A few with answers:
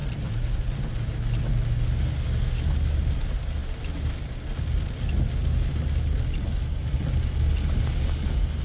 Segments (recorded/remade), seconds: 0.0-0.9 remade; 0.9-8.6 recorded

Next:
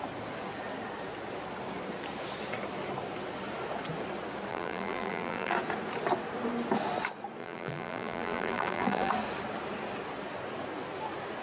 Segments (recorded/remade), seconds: 0.0-4.5 recorded; 4.5-5.5 remade; 5.5-7.4 recorded; 7.4-9.1 remade; 9.1-11.4 recorded

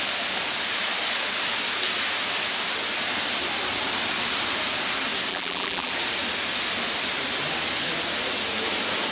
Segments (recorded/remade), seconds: 0.0-5.3 recorded; 5.3-5.9 remade; 5.9-9.1 recorded

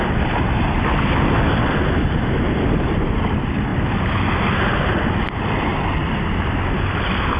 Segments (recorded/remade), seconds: 0.0-7.4 recorded

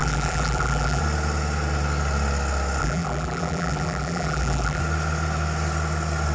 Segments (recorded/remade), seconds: 0.0-1.0 remade; 1.0-2.8 recorded; 2.8-4.8 remade; 4.8-6.3 recorded

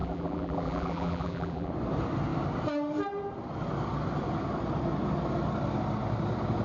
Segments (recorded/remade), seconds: 0.0-1.7 remade; 1.7-6.6 recorded

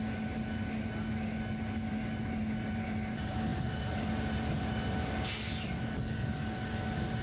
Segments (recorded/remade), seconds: 0.0-7.2 recorded